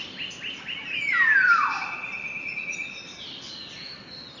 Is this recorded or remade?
recorded